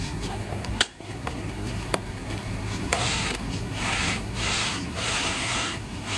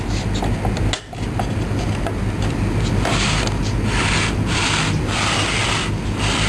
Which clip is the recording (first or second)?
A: second